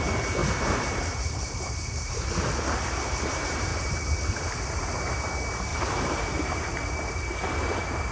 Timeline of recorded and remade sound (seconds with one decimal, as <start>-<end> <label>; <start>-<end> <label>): 0.0-0.4 recorded; 0.4-2.1 remade; 2.1-3.7 recorded; 3.7-4.9 remade; 4.9-5.7 recorded; 5.7-6.7 remade; 6.7-8.1 recorded